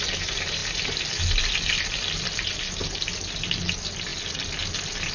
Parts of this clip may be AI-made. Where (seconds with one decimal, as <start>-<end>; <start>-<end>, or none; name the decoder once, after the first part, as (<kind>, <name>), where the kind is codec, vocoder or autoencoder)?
none